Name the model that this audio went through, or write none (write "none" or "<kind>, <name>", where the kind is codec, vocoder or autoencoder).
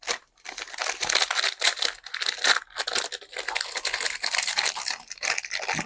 none